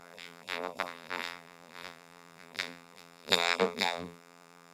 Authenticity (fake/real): fake